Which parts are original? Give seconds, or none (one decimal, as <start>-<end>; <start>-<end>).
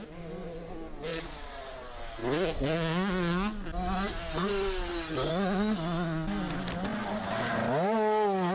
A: 0.0-1.1; 1.8-8.5